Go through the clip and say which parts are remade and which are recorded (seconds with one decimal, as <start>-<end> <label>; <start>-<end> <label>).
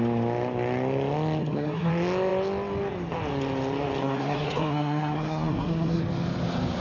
0.0-1.4 recorded; 1.4-1.9 remade; 1.9-4.0 recorded; 4.0-6.0 remade; 6.0-6.8 recorded